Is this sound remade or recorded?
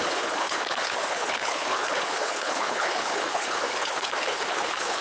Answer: remade